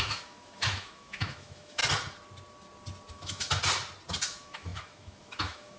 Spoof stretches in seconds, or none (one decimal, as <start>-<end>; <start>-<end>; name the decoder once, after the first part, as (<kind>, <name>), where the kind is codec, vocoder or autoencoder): 0.0-1.8 (autoencoder, DAC-VAE); 3.1-3.6; 4.3-5.8